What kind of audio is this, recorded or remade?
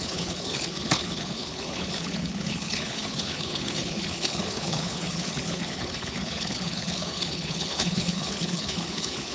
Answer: remade